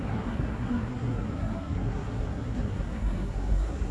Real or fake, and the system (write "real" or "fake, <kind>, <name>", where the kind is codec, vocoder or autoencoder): fake, codec, SNAC